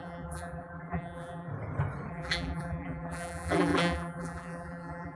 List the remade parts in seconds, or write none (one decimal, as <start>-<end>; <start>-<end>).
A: 0.0-1.5; 2.1-5.2